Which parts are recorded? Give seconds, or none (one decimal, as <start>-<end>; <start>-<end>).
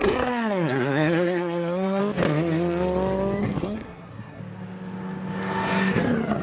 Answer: 2.0-3.4; 4.4-6.4